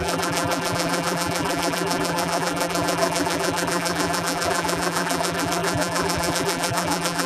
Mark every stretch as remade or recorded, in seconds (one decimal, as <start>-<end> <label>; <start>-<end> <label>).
0.0-7.3 remade